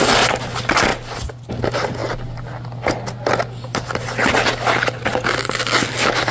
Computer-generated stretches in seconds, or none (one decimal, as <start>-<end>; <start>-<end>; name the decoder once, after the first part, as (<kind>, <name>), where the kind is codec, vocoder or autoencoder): none